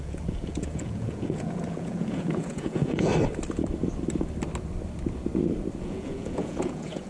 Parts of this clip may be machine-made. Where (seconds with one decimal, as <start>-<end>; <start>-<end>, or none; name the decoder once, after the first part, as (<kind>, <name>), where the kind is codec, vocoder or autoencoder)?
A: 0.0-3.1 (vocoder, Vocos); 5.8-7.1